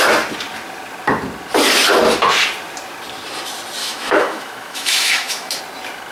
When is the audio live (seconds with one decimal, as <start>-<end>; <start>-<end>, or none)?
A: 0.0-3.8; 5.6-6.1